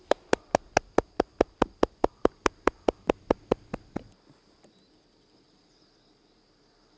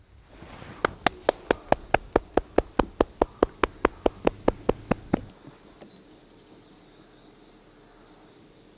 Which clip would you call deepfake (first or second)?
first